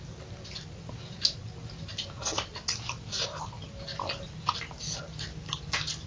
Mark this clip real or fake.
real